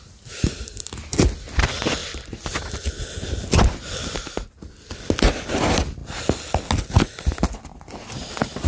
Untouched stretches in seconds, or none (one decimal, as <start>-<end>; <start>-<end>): 0.0-8.7